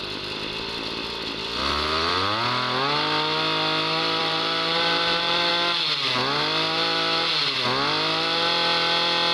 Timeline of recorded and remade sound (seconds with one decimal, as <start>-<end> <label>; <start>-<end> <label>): 0.0-4.2 recorded; 4.2-5.5 remade; 5.5-9.3 recorded